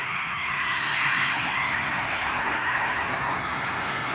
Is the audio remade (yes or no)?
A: yes